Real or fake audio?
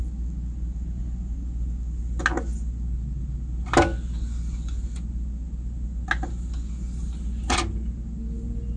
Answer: real